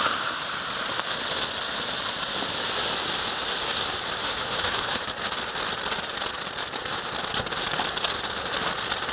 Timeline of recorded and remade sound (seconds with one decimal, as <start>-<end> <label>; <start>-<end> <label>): 0.0-4.2 recorded; 4.2-5.0 remade; 5.0-9.1 recorded